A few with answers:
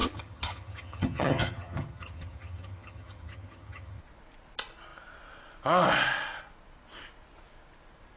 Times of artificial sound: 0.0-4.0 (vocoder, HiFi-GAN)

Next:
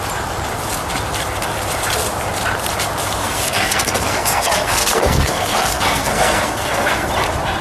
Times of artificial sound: 3.2-7.1 (codec, SNAC)